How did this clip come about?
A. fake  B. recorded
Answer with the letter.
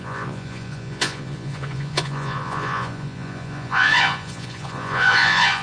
A